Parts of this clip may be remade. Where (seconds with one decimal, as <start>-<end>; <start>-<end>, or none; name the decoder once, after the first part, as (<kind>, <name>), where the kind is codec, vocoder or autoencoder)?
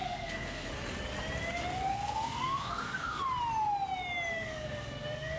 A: 0.0-0.7 (codec, SNAC); 1.9-3.2; 4.3-5.4